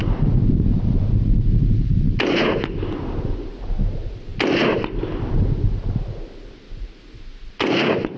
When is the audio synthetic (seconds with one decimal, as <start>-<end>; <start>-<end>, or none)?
none